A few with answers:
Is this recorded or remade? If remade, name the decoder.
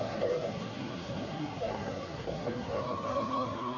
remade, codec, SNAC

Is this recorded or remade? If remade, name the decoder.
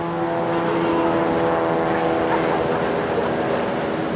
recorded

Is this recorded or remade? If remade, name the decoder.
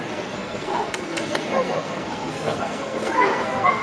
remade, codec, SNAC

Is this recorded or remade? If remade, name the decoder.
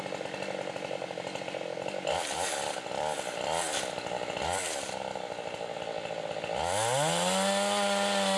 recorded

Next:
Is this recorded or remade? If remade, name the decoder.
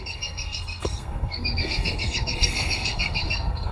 remade, codec, SNAC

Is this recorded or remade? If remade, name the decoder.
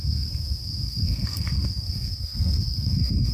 remade, codec, SNAC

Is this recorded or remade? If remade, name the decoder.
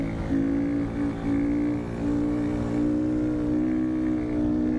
recorded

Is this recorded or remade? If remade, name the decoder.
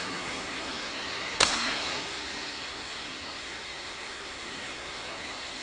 remade, codec, SNAC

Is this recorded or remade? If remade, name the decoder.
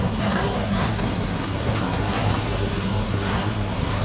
remade, codec, SNAC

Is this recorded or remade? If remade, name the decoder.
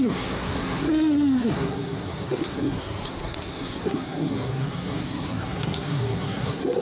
remade, codec, SNAC